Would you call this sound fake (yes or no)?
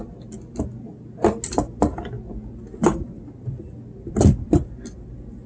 no